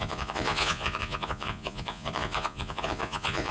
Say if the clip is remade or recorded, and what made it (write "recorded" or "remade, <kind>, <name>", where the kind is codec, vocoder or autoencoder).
remade, vocoder, Vocos